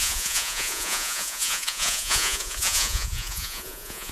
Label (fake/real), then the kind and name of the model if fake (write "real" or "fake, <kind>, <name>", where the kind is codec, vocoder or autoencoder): fake, vocoder, Vocos